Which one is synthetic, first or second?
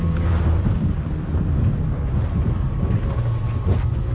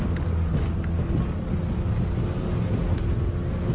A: first